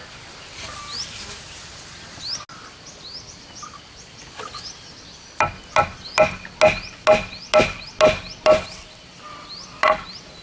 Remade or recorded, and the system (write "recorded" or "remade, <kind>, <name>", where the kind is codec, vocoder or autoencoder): recorded